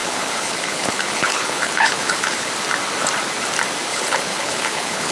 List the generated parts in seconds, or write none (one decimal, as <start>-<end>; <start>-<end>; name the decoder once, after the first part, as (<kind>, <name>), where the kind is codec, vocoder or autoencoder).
0.0-2.5 (codec, HILCodec); 3.9-5.1